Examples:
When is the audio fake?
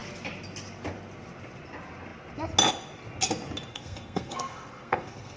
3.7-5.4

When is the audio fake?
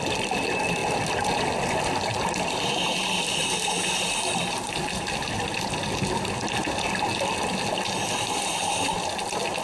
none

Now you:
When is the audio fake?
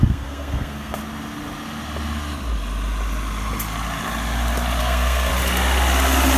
0.0-1.0; 4.8-5.3